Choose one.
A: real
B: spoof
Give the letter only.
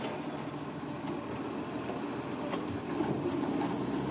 A